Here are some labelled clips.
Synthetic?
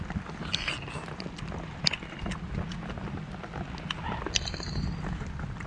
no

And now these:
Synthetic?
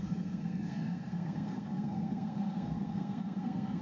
yes